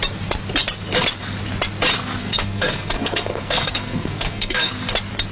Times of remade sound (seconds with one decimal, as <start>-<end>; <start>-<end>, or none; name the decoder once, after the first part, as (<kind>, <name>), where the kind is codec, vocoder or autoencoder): 2.2-4.7 (codec, SNAC)